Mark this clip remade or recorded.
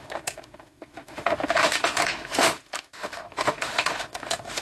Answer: remade